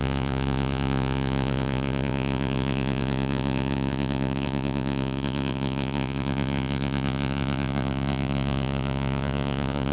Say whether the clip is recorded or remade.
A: remade